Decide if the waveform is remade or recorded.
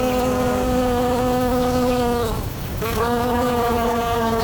remade